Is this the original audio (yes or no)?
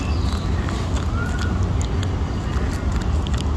yes